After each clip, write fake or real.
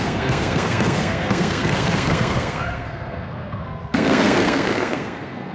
fake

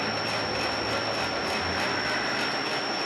real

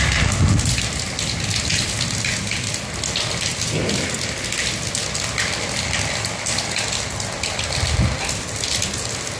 real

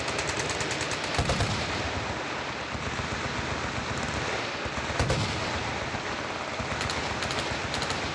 real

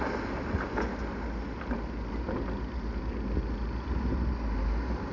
real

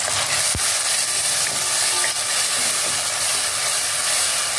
real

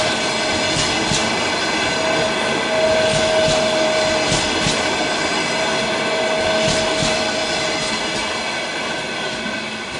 real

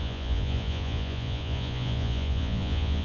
fake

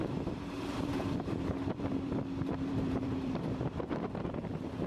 fake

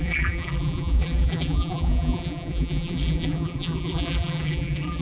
fake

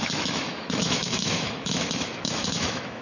fake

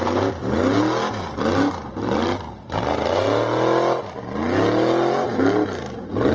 real